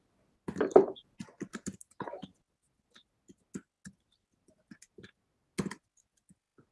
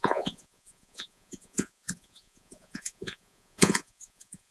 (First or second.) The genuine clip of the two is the first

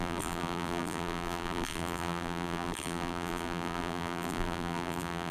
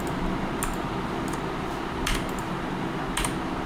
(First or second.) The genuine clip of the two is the second